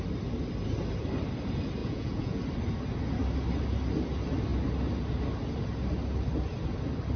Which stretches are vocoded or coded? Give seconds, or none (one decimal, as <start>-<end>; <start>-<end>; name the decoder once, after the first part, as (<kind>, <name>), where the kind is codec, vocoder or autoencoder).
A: 1.8-2.4 (vocoder, Vocos)